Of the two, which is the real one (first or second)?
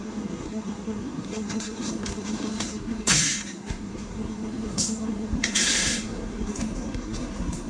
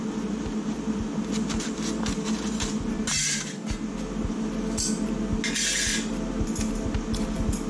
second